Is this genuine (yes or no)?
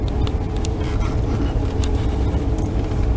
no